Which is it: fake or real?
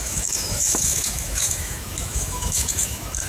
fake